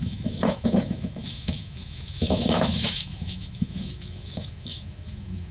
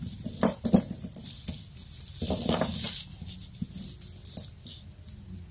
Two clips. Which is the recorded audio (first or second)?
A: second